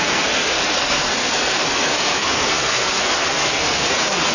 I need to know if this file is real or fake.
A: fake